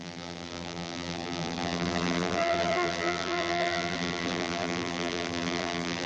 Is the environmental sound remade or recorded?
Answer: remade